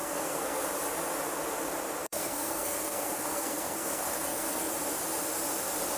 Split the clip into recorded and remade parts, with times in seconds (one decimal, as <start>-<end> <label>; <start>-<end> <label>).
0.0-0.6 remade; 0.6-2.0 recorded; 2.0-4.7 remade; 4.7-6.0 recorded